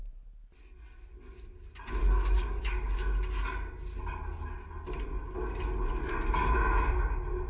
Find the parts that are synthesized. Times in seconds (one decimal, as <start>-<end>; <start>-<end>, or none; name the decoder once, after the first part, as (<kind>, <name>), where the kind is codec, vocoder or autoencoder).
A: 2.0-2.6 (codec, DAC)